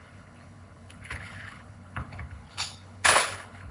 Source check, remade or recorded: remade